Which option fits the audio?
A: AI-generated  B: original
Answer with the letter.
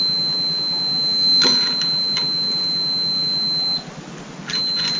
B